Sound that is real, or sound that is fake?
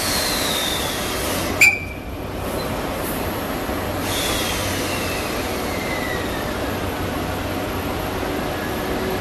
real